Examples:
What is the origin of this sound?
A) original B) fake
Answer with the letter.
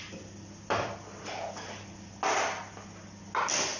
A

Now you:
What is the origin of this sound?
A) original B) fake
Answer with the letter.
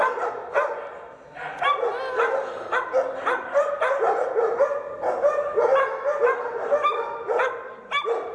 A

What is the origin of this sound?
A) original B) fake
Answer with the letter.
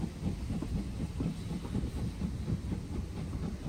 A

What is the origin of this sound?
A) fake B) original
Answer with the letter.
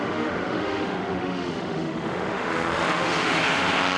A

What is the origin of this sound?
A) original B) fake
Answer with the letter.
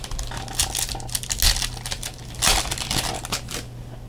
A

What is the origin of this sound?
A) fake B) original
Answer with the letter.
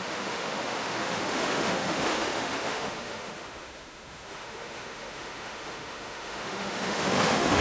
A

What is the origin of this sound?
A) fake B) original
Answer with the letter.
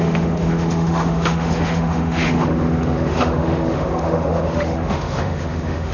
A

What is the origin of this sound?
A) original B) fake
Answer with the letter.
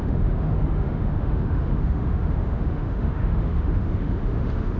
B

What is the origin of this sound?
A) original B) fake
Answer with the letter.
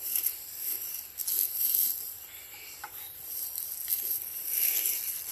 A